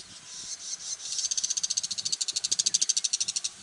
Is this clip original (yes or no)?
yes